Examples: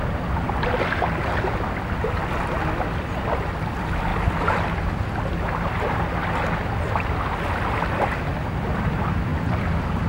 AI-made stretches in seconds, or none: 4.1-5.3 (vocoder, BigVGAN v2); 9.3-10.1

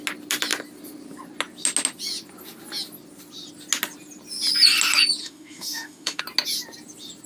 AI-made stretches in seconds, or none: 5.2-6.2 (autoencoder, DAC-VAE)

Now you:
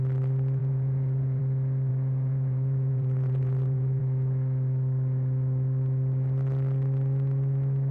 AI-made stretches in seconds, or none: 0.6-1.4 (vocoder, Vocos); 1.9-4.0

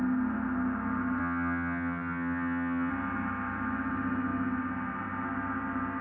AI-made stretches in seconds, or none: 1.2-2.9 (vocoder, HiFi-GAN)